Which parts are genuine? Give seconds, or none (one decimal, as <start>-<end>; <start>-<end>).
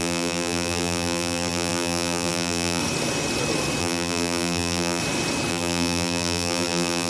2.8-3.8; 5.0-5.5